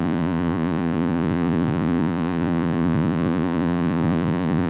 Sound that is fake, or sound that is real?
fake